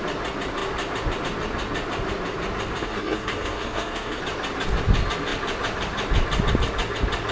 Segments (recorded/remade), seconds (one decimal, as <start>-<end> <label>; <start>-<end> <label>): 0.0-2.8 recorded; 2.8-4.2 remade; 4.2-7.3 recorded